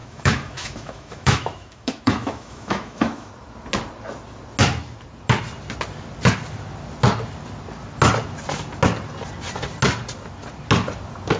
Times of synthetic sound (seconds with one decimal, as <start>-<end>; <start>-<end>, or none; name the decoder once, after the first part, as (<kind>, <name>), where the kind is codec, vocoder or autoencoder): 0.0-3.3 (autoencoder, DAC-VAE)